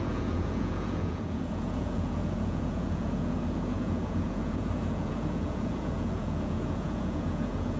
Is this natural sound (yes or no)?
no